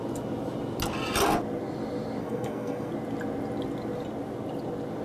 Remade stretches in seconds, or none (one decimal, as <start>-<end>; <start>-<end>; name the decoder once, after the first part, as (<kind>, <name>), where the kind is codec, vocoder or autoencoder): 2.2-2.9 (codec, SNAC)